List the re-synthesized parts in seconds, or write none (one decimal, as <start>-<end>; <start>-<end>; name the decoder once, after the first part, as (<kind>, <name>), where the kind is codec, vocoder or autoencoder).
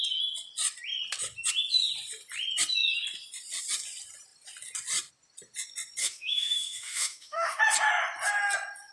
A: 6.0-7.6 (autoencoder, DAC-VAE)